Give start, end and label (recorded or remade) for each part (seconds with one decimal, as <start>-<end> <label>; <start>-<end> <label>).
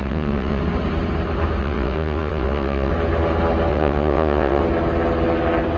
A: 0.0-0.6 remade; 0.6-1.6 recorded; 1.6-2.9 remade; 2.9-3.7 recorded; 3.7-4.6 remade; 4.6-5.8 recorded